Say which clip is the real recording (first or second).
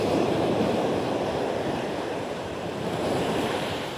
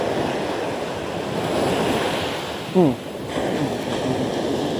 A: second